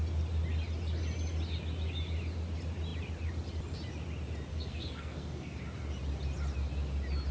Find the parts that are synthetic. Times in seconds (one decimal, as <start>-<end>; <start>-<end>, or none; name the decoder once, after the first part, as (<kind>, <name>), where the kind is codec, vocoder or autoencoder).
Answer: 4.5-5.6 (codec, SNAC)